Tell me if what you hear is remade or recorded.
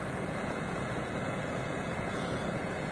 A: remade